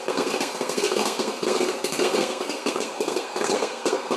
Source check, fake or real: fake